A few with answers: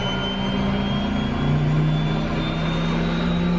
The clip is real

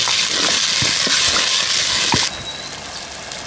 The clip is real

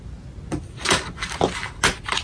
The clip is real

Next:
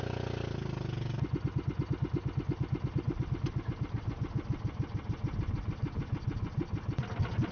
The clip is real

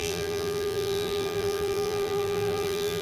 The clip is fake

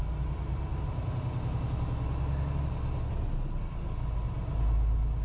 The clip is real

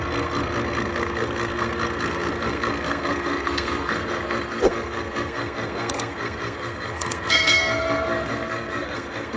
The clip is fake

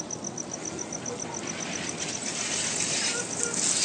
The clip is real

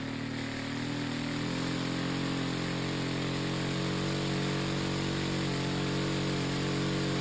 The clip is real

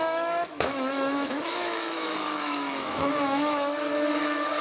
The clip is fake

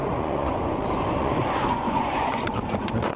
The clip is fake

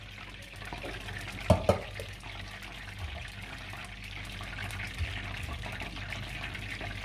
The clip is real